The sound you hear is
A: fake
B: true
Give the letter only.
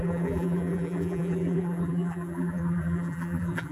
A